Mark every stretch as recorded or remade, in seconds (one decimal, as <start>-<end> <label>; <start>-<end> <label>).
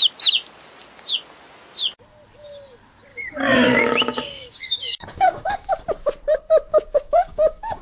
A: 0.0-3.1 recorded; 3.1-5.7 remade; 5.7-6.7 recorded; 6.7-7.8 remade